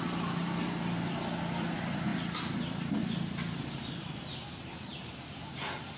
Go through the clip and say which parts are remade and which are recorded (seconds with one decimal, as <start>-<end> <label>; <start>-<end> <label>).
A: 0.0-4.9 recorded; 4.9-5.5 remade; 5.5-6.0 recorded